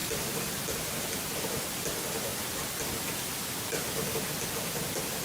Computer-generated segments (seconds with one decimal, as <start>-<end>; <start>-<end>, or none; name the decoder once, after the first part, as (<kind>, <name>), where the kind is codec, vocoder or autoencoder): none